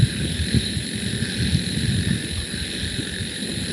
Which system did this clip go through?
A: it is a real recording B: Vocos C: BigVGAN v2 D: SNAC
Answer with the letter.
A